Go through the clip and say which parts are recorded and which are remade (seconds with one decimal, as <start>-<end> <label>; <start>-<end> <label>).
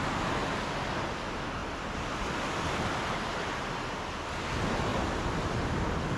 0.0-0.4 recorded; 0.4-1.1 remade; 1.1-1.6 recorded; 1.6-2.4 remade; 2.4-4.9 recorded; 4.9-5.8 remade; 5.8-6.2 recorded